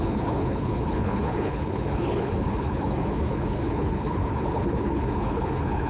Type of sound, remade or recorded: remade